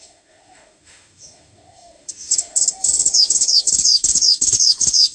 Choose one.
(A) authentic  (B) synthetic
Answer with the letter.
B